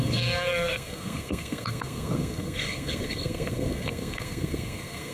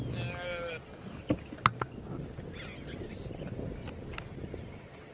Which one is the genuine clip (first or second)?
second